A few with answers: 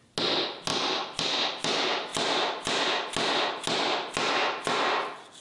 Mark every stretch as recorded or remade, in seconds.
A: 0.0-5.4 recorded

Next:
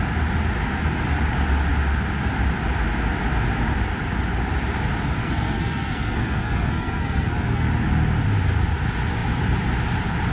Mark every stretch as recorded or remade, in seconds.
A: 0.0-5.2 recorded; 5.2-7.7 remade; 7.7-10.3 recorded

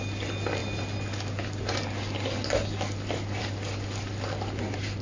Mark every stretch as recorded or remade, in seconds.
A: 0.0-5.0 recorded

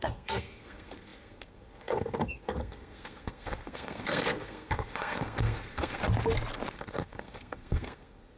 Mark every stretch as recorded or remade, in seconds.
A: 0.0-6.0 remade; 6.0-6.7 recorded; 6.7-8.4 remade

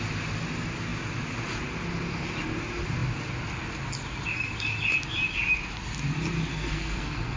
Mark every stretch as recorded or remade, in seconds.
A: 0.0-6.5 recorded; 6.5-7.4 remade